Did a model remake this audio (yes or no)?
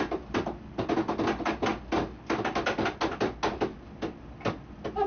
no